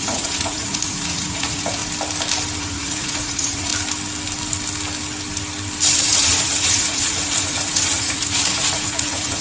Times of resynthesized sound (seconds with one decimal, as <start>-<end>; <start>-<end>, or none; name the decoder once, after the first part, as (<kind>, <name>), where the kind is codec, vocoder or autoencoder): 0.0-1.8 (vocoder, Vocos); 2.6-3.7; 6.0-9.4